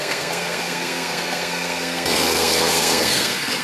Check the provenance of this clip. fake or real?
fake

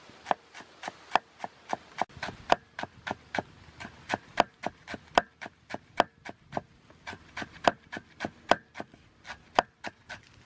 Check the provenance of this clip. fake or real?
real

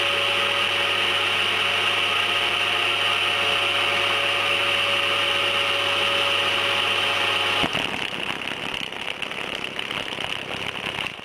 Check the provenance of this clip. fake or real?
real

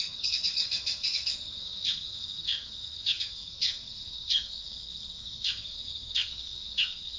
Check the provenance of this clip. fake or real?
fake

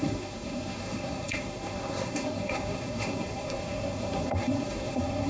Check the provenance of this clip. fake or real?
fake